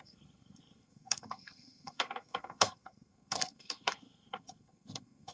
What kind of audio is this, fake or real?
fake